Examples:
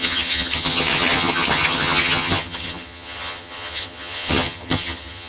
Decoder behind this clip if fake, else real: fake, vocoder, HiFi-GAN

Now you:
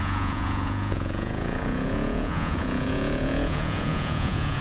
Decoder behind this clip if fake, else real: fake, vocoder, Vocos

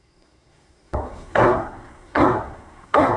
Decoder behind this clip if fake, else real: fake, codec, SNAC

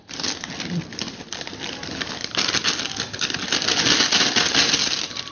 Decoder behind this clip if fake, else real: real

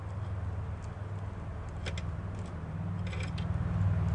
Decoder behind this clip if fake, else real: real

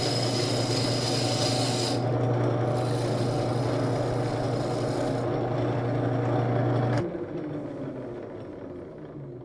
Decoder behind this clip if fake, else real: real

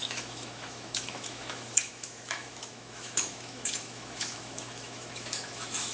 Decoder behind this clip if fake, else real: fake, autoencoder, DAC-VAE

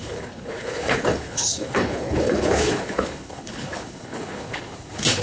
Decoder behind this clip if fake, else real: fake, codec, HILCodec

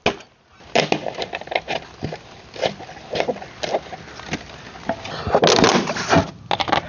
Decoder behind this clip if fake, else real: real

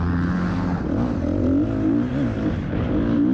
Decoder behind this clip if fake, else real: real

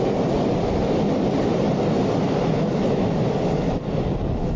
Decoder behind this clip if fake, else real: real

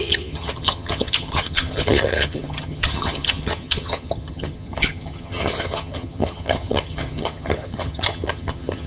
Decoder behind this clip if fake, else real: fake, vocoder, HiFi-GAN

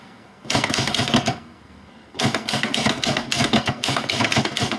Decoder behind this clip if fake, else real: fake, codec, SNAC